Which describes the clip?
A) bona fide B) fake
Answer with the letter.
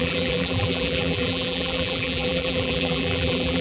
B